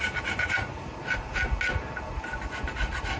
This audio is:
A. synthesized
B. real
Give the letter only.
B